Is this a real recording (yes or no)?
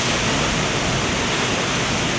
yes